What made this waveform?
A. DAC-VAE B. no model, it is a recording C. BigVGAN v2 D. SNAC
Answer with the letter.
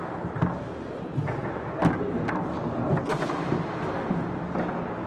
B